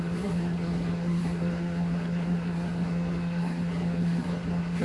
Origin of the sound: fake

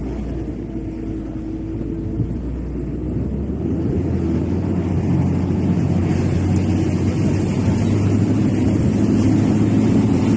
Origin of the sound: real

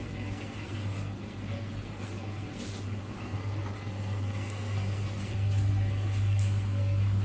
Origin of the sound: fake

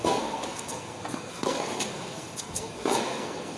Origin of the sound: fake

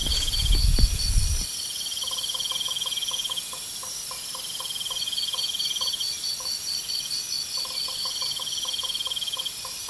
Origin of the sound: real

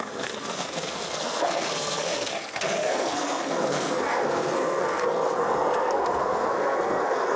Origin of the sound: fake